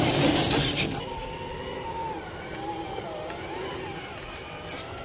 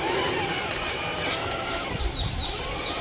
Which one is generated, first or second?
second